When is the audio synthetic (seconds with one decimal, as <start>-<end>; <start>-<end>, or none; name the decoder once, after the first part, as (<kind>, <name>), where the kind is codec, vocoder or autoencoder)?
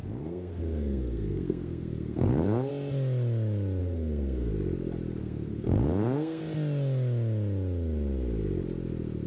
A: 0.0-2.7 (codec, SNAC); 3.8-4.5; 5.2-6.4